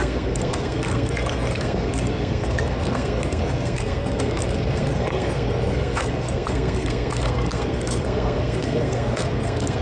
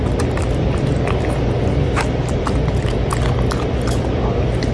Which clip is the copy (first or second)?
first